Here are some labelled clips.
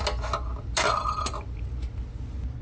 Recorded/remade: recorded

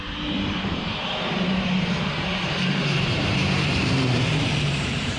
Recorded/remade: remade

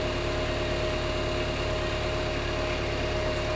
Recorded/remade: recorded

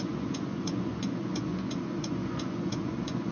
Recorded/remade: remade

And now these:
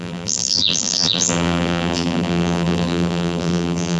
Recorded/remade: remade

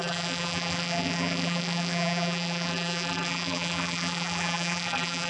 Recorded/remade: remade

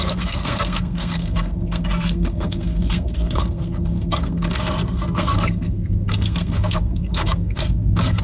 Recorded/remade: remade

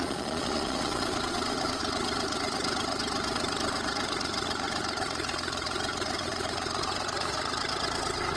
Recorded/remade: remade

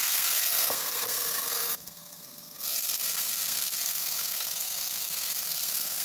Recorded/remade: remade